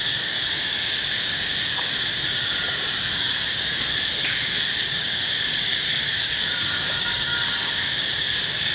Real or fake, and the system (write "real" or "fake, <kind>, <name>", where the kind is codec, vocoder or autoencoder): fake, codec, DAC